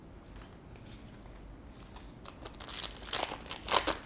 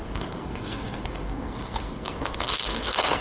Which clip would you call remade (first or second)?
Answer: second